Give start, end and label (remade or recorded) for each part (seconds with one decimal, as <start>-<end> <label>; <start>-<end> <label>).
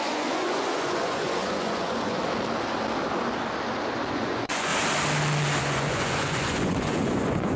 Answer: 0.0-2.2 remade; 2.2-4.1 recorded; 4.1-4.7 remade; 4.7-5.6 recorded; 5.6-7.6 remade